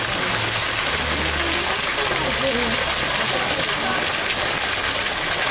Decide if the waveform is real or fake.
real